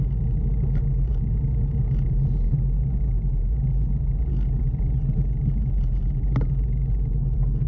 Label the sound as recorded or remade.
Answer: recorded